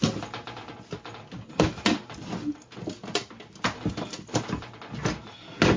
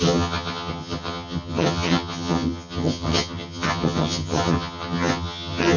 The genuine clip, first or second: first